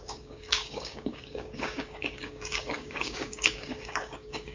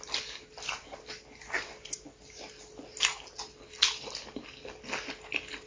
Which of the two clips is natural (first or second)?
second